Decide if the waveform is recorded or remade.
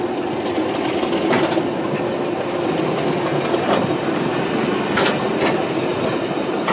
recorded